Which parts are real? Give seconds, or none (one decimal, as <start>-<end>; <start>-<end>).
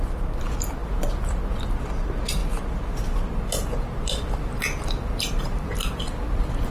2.4-3.8